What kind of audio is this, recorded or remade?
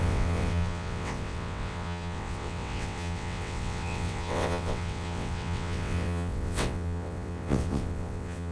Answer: remade